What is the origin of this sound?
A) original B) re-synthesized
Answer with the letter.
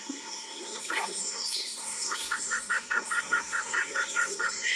B